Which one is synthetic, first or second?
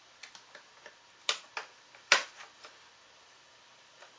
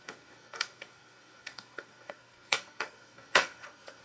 second